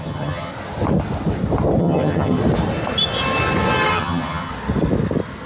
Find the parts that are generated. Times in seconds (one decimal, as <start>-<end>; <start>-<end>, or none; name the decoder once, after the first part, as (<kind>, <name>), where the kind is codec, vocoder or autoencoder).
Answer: 0.0-0.5 (vocoder, HiFi-GAN); 1.8-2.4; 3.9-4.5